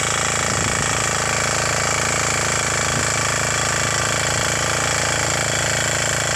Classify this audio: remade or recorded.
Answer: recorded